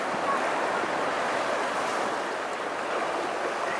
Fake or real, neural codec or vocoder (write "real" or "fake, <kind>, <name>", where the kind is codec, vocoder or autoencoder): real